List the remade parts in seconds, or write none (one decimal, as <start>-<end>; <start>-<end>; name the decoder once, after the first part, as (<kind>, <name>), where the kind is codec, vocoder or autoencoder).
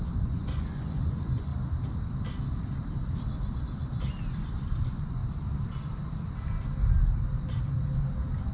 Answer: 0.0-1.5 (vocoder, Vocos); 4.8-5.2